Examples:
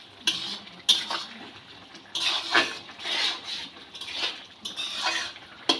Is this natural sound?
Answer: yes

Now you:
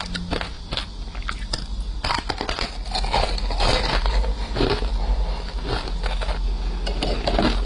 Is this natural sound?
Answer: yes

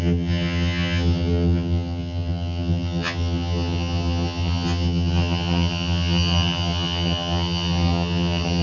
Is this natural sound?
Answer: no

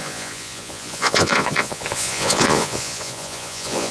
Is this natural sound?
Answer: no